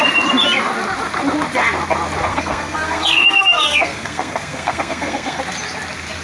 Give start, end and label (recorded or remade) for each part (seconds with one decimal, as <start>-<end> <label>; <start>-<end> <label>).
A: 0.0-2.3 recorded; 2.3-5.4 remade; 5.4-6.2 recorded